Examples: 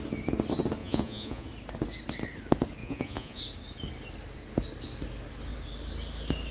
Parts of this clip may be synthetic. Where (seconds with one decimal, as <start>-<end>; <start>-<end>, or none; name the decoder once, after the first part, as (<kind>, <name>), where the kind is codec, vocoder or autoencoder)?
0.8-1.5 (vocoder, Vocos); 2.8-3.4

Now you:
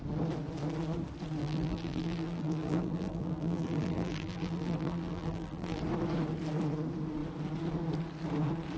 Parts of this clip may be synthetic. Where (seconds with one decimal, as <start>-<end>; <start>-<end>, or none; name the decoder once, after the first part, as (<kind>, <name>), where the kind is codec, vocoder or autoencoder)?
1.4-5.8 (vocoder, BigVGAN v2)

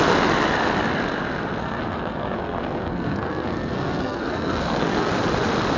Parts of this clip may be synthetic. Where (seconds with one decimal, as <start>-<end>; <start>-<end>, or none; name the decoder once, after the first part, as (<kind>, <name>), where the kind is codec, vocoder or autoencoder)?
1.6-5.1 (codec, SNAC)

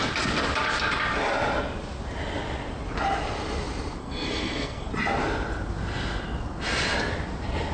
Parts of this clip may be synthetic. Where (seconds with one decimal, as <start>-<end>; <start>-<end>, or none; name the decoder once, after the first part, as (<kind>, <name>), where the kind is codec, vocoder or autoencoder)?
4.0-4.9 (codec, SNAC)

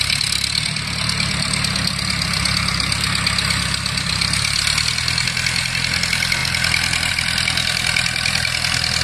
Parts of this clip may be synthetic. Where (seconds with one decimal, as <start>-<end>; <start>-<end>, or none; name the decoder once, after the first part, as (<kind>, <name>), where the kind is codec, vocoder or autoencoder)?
none